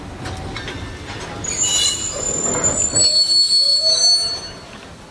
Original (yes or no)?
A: yes